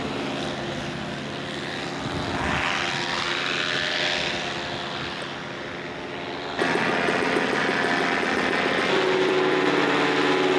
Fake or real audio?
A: real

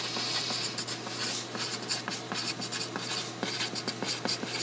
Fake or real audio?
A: real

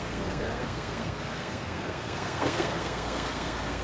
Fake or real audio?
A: fake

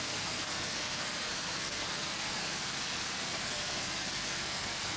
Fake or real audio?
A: fake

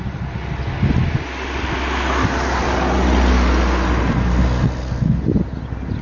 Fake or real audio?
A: real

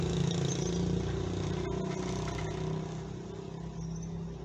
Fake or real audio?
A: real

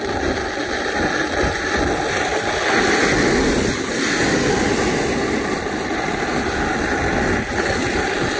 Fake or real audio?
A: real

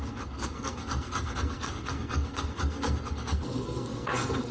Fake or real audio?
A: fake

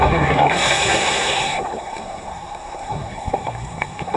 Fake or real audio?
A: fake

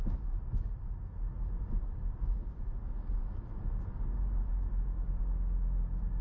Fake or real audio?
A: real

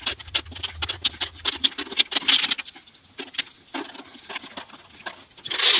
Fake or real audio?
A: real